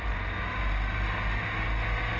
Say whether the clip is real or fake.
real